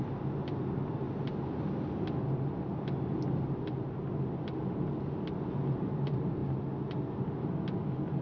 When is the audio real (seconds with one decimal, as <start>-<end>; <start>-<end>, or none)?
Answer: 0.0-8.2